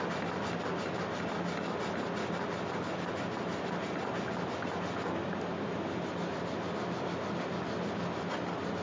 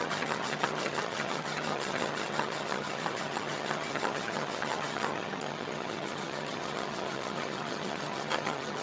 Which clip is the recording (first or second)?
first